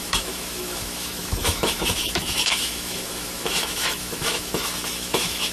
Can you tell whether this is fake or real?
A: fake